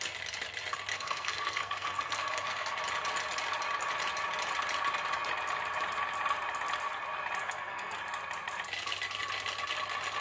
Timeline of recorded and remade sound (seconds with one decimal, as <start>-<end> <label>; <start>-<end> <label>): 0.0-0.9 recorded; 0.9-2.8 remade; 2.8-7.4 recorded; 7.4-8.0 remade; 8.0-10.2 recorded